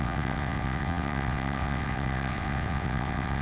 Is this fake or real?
fake